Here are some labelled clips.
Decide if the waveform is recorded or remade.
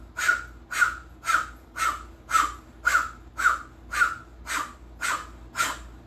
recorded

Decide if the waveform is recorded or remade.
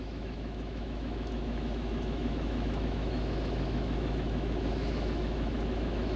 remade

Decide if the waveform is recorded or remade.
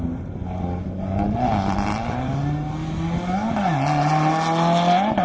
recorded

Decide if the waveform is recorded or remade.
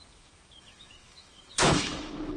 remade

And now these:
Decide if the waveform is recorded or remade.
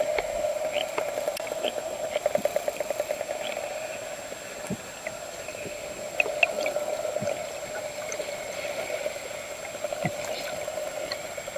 recorded